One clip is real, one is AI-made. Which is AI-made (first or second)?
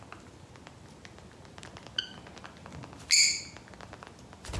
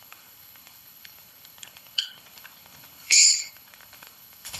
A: second